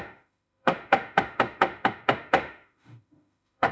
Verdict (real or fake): fake